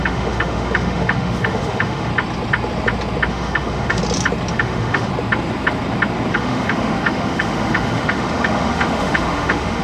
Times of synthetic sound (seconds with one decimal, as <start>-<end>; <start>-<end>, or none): 0.0-2.1; 3.3-4.0; 4.5-5.1; 6.3-9.8